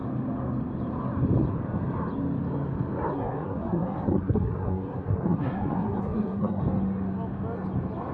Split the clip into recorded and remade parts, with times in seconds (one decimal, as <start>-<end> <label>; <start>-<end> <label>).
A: 0.0-3.1 recorded; 3.1-6.6 remade; 6.6-8.1 recorded